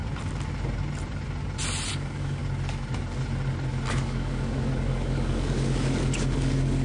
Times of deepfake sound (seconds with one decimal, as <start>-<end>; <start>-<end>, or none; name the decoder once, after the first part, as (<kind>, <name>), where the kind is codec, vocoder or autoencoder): 1.9-2.4 (codec, DAC); 3.9-6.8